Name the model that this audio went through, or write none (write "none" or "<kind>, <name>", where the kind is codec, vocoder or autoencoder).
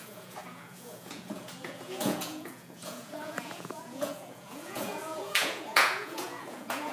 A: vocoder, Vocos